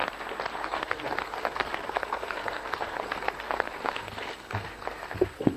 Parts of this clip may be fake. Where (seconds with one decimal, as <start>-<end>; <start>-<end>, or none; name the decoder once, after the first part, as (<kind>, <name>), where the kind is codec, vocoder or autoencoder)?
0.6-5.6 (codec, SNAC)

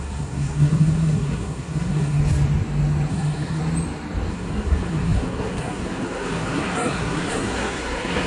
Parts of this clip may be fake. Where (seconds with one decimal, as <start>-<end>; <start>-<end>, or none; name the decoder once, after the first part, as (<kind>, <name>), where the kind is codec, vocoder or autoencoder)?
0.0-2.2 (codec, SNAC); 3.1-3.6; 4.3-8.3